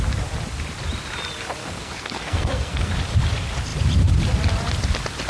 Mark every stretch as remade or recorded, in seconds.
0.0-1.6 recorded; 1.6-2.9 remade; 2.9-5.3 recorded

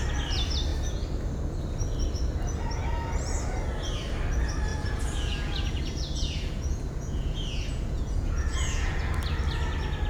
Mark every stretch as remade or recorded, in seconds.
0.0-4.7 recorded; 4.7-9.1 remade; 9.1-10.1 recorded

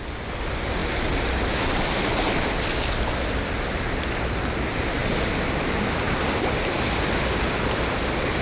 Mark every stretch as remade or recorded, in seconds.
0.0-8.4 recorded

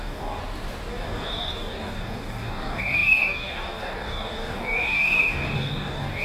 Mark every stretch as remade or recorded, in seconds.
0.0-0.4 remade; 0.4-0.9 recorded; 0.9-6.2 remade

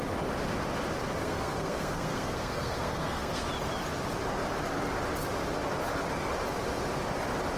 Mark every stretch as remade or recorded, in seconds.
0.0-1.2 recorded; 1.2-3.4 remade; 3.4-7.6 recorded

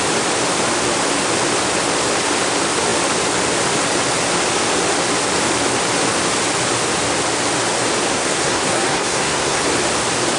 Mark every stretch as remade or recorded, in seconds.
0.0-8.1 recorded; 8.1-9.6 remade; 9.6-10.4 recorded